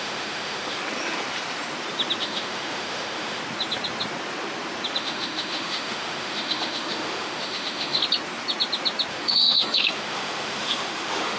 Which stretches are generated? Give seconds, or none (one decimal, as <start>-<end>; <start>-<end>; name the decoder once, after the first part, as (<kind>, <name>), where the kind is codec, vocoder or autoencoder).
0.0-0.8 (autoencoder, DAC-VAE); 2.2-3.4; 5.0-8.0; 9.1-11.4